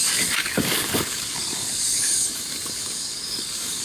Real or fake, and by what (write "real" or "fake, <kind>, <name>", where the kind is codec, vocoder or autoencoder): fake, codec, DAC